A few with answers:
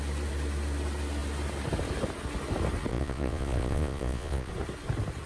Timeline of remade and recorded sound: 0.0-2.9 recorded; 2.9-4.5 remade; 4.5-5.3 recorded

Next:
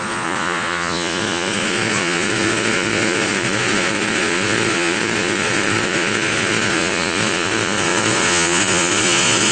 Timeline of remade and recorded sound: 0.0-9.5 remade

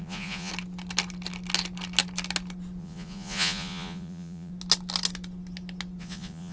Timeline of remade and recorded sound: 0.0-0.5 remade; 0.5-2.8 recorded; 2.8-4.5 remade; 4.5-6.0 recorded; 6.0-6.5 remade

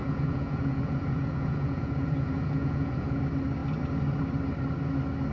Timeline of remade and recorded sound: 0.0-3.2 remade; 3.2-5.3 recorded

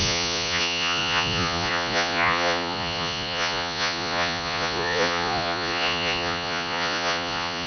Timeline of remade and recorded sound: 0.0-7.7 remade